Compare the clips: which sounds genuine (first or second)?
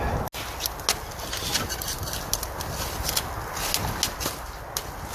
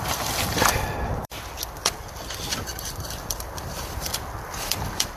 first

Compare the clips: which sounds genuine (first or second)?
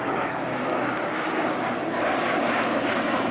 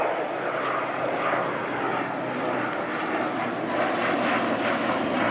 second